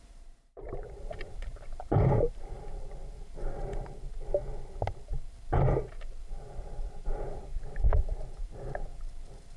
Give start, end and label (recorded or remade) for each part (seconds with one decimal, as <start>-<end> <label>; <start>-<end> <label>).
0.0-3.0 remade; 3.0-6.4 recorded; 6.4-8.9 remade; 8.9-9.6 recorded